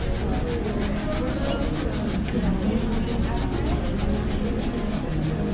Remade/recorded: recorded